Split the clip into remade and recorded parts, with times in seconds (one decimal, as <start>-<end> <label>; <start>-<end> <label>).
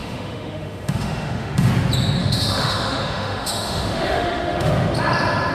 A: 0.0-1.7 remade; 1.7-2.2 recorded; 2.2-4.7 remade; 4.7-5.5 recorded